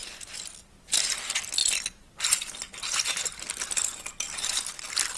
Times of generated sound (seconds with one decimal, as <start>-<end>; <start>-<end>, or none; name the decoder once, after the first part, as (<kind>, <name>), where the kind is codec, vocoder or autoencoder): none